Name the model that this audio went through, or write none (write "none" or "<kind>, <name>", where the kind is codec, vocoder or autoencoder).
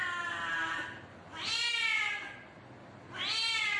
none